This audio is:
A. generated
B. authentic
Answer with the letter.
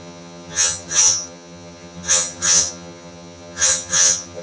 A